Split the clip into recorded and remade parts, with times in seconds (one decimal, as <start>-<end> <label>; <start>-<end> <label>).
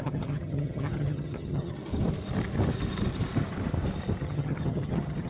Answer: 0.0-1.8 remade; 1.8-4.2 recorded; 4.2-5.3 remade